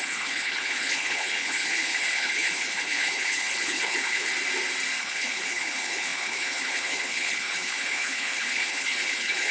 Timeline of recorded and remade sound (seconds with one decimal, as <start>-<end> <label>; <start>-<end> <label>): 0.0-4.3 remade; 4.3-5.0 recorded; 5.0-9.5 remade